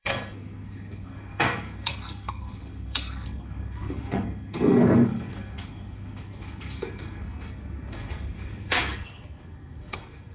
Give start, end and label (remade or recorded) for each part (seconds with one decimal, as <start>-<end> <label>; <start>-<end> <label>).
0.0-10.3 remade